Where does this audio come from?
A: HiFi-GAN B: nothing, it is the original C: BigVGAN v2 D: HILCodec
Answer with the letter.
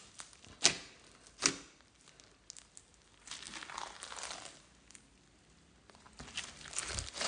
B